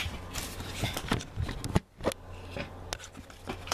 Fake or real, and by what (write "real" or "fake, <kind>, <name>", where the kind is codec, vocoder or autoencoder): real